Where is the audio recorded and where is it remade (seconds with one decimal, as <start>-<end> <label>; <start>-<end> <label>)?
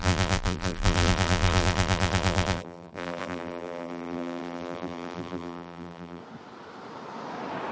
0.0-6.2 remade; 6.2-7.7 recorded